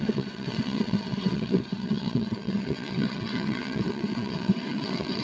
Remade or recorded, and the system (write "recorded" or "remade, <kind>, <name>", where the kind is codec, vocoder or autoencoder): remade, vocoder, WaveNeXt